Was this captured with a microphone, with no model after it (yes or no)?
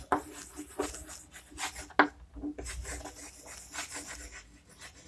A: yes